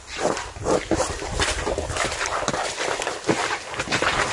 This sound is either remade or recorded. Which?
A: recorded